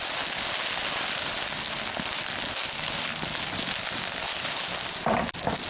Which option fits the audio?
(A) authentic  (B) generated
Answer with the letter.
A